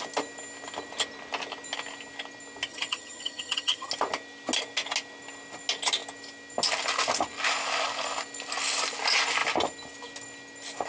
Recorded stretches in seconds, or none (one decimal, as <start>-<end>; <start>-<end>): 0.0-2.7; 3.9-10.9